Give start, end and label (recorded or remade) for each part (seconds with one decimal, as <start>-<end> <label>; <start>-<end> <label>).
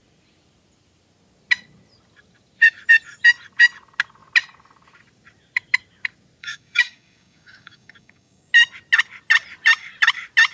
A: 0.0-6.4 recorded; 6.4-8.5 remade; 8.5-10.5 recorded